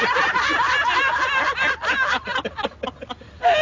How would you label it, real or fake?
real